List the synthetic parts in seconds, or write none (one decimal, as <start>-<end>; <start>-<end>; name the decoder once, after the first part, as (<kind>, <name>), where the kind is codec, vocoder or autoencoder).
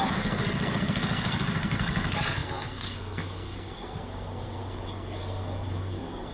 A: 0.0-6.3 (codec, SNAC)